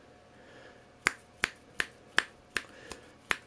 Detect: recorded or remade recorded